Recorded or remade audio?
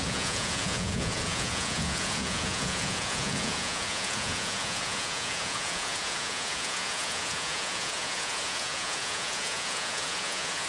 remade